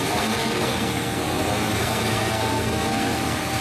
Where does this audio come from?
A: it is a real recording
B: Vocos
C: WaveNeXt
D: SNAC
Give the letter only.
D